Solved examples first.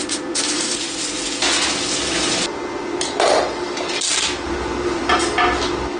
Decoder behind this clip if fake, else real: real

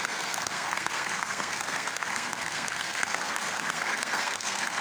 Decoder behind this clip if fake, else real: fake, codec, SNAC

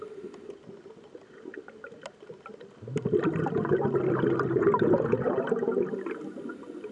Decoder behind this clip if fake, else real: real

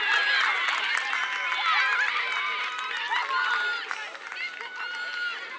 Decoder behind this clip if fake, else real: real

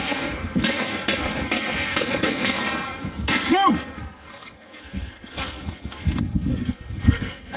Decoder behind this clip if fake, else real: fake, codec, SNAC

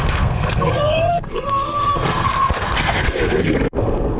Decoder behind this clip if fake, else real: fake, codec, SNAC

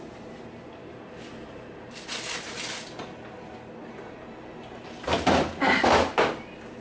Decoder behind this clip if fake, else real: real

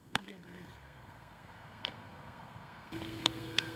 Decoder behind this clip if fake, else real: fake, codec, SNAC